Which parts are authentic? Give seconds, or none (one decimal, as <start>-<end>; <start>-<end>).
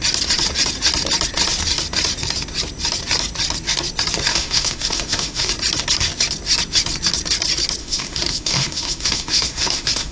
0.0-4.3; 5.5-7.8